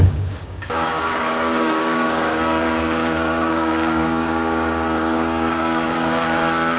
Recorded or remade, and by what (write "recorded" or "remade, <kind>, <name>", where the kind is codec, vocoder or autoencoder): remade, codec, DAC